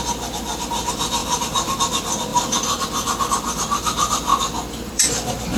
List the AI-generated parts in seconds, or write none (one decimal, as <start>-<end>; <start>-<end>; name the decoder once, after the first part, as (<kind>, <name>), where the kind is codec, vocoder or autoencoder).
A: 0.0-2.3 (vocoder, BigVGAN v2); 3.2-5.6